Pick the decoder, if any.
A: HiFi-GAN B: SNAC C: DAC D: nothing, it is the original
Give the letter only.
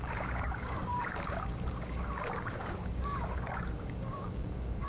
C